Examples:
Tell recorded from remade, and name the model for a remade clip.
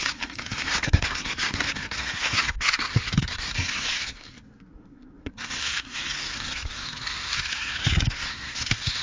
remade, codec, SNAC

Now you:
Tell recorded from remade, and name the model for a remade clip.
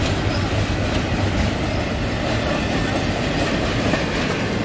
recorded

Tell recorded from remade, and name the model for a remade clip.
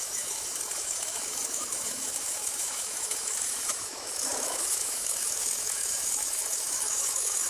remade, autoencoder, DAC-VAE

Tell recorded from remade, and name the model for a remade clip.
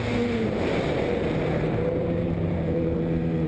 remade, vocoder, BigVGAN v2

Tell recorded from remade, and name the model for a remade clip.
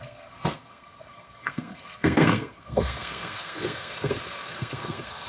remade, codec, SNAC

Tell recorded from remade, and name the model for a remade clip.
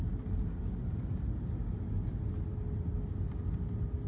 recorded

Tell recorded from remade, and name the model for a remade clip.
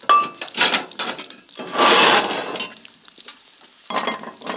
recorded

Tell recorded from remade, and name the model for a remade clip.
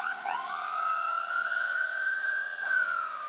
remade, vocoder, HiFi-GAN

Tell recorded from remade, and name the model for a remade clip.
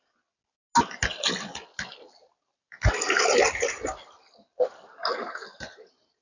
recorded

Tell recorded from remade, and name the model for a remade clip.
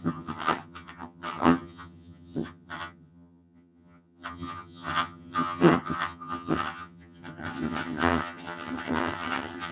remade, vocoder, HiFi-GAN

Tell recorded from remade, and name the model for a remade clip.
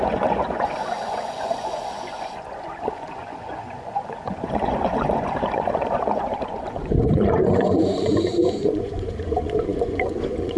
remade, vocoder, Vocos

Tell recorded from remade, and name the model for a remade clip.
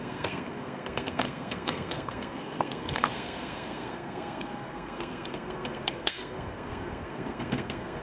remade, codec, SNAC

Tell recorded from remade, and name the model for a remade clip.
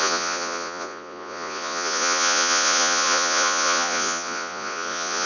remade, vocoder, Vocos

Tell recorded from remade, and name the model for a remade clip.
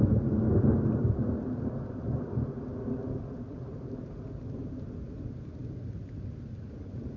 recorded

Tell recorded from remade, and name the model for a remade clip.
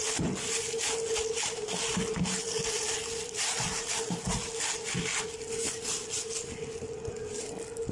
recorded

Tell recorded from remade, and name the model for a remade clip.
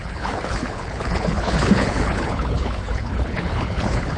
remade, codec, HILCodec